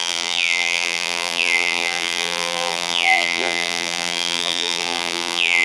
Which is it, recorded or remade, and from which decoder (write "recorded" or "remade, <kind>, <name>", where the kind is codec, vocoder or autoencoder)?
remade, vocoder, BigVGAN v2